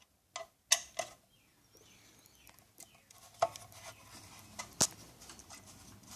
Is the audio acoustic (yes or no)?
yes